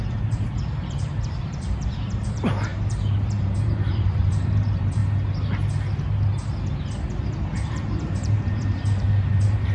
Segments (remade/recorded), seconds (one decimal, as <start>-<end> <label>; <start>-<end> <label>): 0.0-5.0 remade; 5.0-7.7 recorded; 7.7-9.7 remade